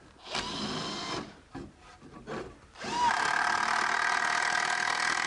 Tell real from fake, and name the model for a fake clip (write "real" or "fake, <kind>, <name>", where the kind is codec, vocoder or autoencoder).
real